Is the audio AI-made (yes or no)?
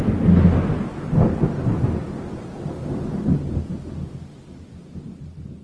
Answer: no